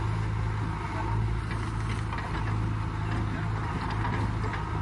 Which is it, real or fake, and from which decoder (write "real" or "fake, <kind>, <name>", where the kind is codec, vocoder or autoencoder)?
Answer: real